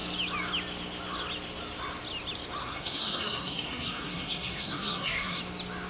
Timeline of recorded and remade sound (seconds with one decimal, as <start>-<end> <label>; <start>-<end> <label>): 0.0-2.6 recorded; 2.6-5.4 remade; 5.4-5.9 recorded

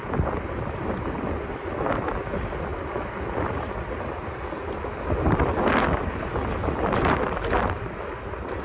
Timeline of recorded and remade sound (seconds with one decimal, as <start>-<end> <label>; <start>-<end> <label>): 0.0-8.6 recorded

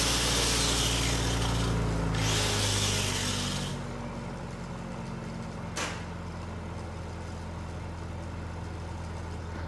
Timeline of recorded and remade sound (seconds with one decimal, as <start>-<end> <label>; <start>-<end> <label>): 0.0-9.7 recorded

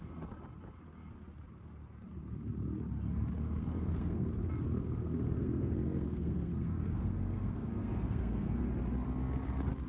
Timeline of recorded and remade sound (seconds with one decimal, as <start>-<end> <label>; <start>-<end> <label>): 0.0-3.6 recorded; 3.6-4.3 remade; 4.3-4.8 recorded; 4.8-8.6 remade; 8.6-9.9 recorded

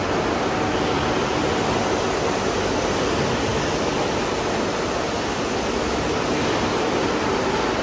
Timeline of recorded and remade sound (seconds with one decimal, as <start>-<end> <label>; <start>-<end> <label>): 0.0-7.8 recorded

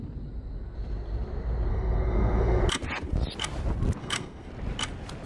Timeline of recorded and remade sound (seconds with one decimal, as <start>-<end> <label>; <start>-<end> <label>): 0.0-1.7 recorded; 1.7-2.6 remade; 2.6-4.0 recorded; 4.0-4.5 remade; 4.5-5.3 recorded